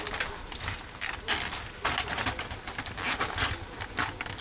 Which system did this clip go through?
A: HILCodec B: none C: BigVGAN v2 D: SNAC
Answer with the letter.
B